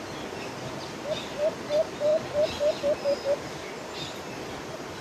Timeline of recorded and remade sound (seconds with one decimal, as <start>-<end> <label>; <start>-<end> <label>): 0.0-2.1 recorded; 2.1-5.0 remade